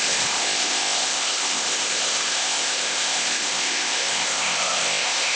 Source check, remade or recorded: remade